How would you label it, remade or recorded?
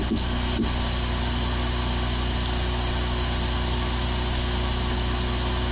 recorded